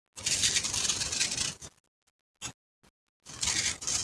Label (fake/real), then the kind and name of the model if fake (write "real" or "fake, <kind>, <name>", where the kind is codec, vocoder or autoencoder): real